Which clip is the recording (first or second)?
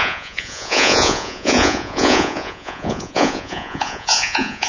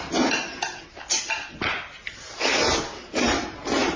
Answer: second